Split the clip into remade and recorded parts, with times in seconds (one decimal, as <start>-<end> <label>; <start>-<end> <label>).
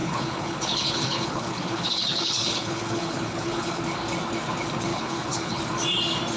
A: 0.0-3.8 remade; 3.8-4.9 recorded; 4.9-5.6 remade; 5.6-6.4 recorded